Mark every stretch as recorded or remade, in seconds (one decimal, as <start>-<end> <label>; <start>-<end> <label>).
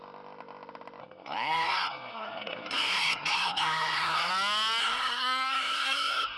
0.0-1.0 recorded; 1.0-4.3 remade; 4.3-4.8 recorded; 4.8-6.4 remade